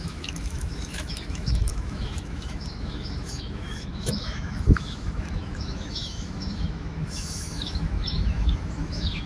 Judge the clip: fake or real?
fake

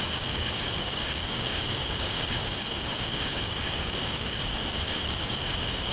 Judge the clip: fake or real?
fake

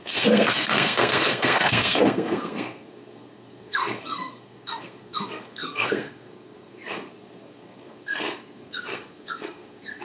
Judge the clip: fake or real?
fake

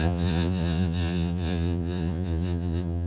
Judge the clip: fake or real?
fake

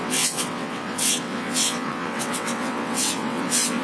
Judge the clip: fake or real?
fake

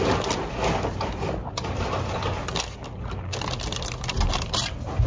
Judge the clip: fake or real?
real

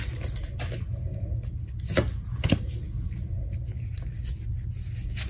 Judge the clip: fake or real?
real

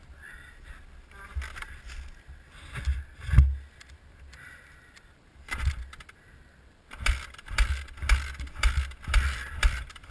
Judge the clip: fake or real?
real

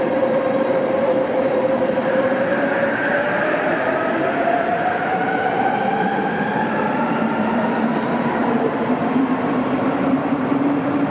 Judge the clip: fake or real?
fake